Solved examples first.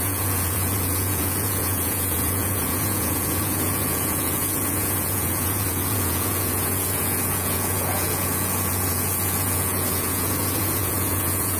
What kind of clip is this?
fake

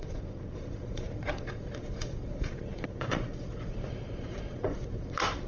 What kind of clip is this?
fake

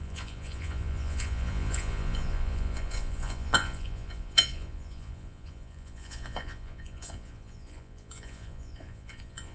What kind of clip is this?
fake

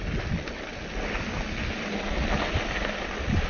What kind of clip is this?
real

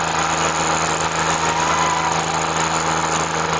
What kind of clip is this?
real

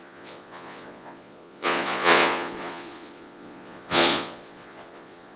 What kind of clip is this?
fake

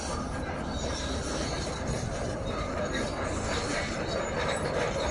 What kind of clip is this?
real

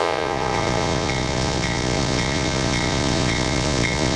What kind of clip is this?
fake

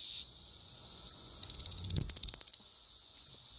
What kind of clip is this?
fake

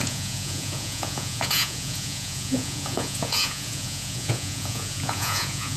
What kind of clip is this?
fake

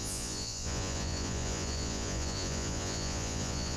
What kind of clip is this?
fake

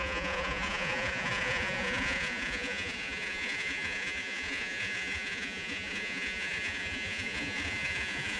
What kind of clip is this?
fake